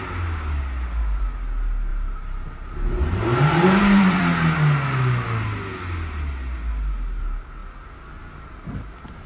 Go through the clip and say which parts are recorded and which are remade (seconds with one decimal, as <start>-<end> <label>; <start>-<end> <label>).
0.0-1.9 recorded; 1.9-4.2 remade; 4.2-9.3 recorded